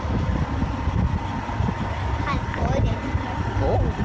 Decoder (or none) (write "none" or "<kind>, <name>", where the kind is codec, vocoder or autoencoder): vocoder, BigVGAN v2